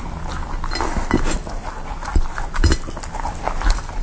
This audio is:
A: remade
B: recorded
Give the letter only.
B